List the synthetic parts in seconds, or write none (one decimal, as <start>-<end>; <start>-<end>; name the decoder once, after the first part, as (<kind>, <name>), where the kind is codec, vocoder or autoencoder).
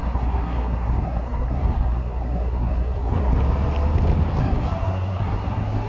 0.0-3.3 (codec, SNAC); 4.4-5.9